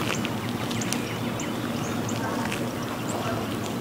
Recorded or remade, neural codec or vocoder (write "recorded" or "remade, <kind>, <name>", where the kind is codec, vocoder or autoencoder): recorded